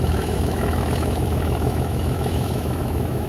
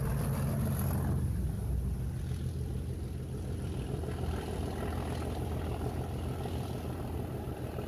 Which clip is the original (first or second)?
second